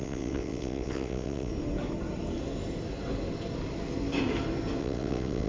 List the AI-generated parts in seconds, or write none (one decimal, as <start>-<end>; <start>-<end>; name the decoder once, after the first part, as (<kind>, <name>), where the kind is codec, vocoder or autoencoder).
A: 0.0-1.5 (vocoder, WaveNeXt); 4.8-5.5